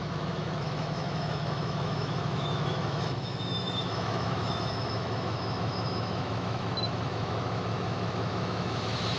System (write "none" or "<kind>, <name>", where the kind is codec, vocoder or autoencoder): autoencoder, DAC-VAE